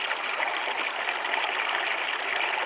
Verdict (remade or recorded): recorded